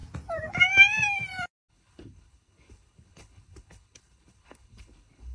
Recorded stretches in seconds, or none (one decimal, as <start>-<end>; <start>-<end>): 0.0-1.7